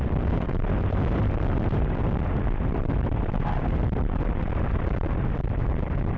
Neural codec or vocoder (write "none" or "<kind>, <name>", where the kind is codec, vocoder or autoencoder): vocoder, BigVGAN v2